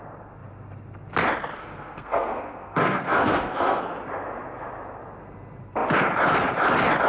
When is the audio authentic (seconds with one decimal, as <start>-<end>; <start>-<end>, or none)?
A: 0.0-1.6; 3.8-7.1